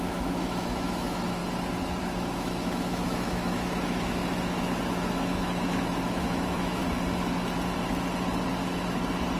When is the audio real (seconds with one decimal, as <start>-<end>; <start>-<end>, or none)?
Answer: 1.4-2.0; 6.8-9.4